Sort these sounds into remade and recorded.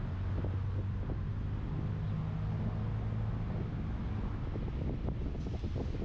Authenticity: recorded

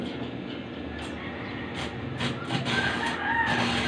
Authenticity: recorded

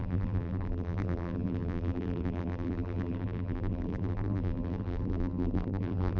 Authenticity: remade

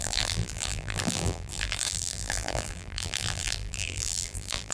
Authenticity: remade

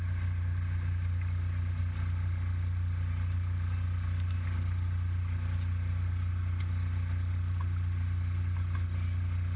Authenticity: recorded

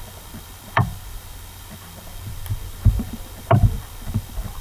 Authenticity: remade